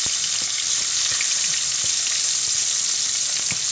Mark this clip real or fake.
real